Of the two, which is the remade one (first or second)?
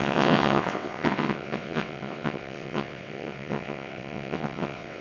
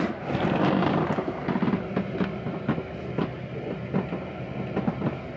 first